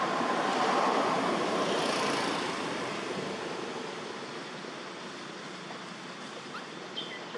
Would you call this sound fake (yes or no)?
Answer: no